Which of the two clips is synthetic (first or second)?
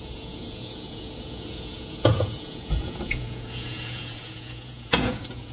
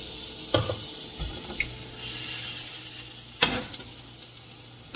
first